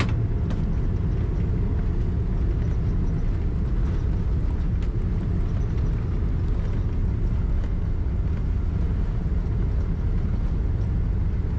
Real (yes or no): yes